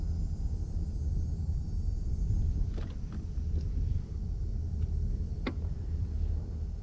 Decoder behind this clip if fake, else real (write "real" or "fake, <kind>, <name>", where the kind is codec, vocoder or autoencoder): real